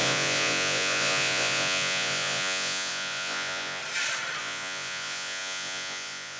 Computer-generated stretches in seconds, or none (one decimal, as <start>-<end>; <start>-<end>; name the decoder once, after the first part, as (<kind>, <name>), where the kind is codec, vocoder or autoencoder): 0.0-3.8 (vocoder, Vocos); 4.4-6.4